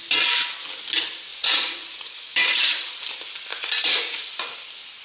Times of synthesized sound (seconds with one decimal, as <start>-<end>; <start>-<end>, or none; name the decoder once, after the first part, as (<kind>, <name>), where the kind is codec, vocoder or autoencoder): 1.3-2.0 (vocoder, Vocos); 2.4-2.9; 3.5-4.3